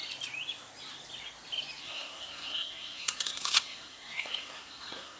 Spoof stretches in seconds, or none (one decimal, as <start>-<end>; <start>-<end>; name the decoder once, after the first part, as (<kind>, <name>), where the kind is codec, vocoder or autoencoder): 1.8-5.2 (codec, SNAC)